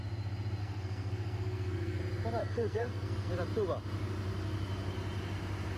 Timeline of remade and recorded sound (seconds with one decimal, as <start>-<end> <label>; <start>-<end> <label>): 0.0-0.6 recorded; 0.6-2.0 remade; 2.0-2.4 recorded; 2.4-3.3 remade; 3.3-5.8 recorded